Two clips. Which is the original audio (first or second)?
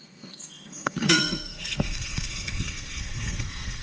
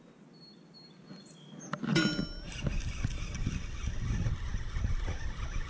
second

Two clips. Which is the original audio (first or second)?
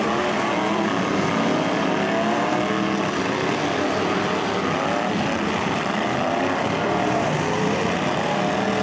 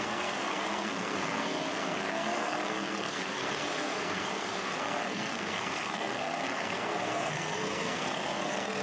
first